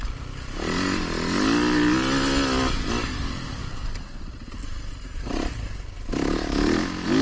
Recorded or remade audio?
recorded